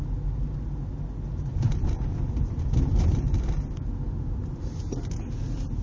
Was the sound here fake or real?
real